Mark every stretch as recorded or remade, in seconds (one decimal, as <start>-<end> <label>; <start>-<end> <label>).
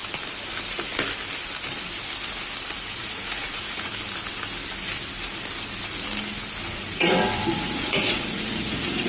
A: 0.0-3.0 recorded; 3.0-3.9 remade; 3.9-6.7 recorded; 6.7-9.1 remade